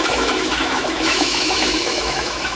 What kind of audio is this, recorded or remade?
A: remade